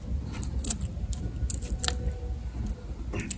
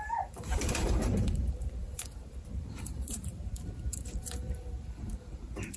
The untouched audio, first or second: first